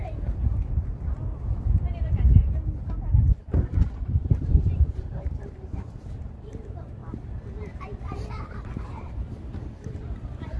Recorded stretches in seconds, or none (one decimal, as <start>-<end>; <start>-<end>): 0.0-2.0; 7.0-8.3